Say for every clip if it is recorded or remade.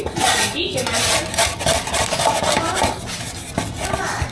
recorded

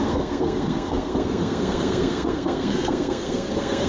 remade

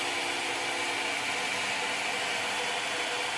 recorded